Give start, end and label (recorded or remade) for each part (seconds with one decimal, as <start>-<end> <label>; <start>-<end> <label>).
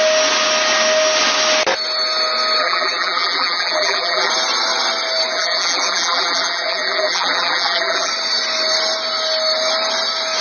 0.0-2.6 recorded; 2.6-4.3 remade; 4.3-5.3 recorded; 5.3-8.1 remade; 8.1-10.4 recorded